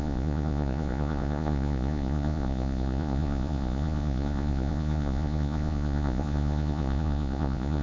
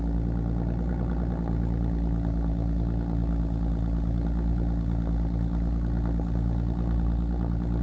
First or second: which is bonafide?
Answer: second